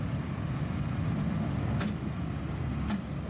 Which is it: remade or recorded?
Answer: recorded